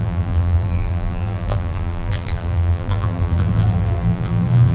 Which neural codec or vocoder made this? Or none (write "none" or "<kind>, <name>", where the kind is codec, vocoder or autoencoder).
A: vocoder, BigVGAN v2